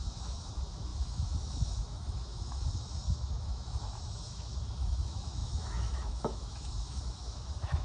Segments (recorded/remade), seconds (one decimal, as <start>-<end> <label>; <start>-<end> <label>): 0.0-7.8 remade